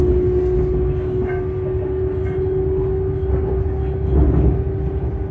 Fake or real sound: real